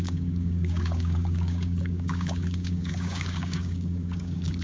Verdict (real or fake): fake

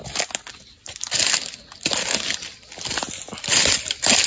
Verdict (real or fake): real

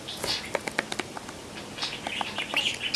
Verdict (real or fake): real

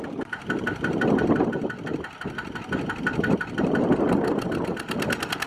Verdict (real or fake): real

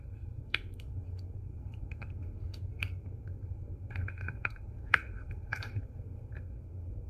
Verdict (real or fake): fake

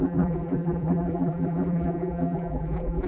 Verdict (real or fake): fake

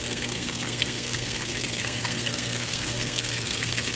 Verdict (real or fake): fake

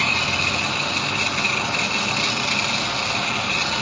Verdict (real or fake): real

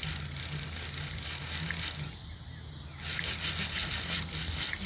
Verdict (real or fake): real